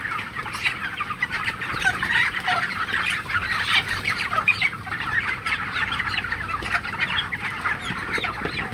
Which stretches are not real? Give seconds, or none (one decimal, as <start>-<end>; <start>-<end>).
0.8-6.0